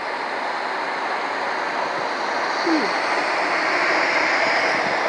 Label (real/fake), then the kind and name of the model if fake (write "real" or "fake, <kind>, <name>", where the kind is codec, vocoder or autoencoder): real